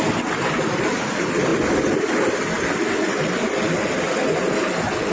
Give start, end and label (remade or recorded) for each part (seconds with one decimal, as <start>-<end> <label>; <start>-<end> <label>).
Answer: 0.0-5.1 recorded